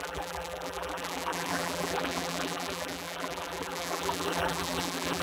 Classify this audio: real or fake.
fake